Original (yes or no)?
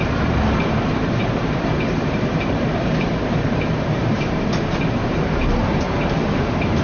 no